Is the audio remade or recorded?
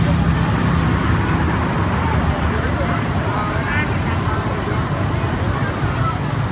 recorded